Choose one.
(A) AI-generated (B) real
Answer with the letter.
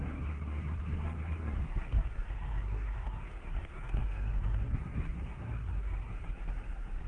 A